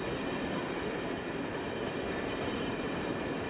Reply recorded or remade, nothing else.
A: remade